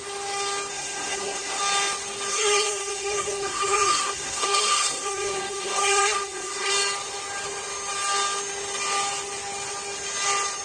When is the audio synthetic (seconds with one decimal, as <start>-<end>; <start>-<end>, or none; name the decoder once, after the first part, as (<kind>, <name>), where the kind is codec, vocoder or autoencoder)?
0.7-1.6 (codec, SNAC); 2.3-6.7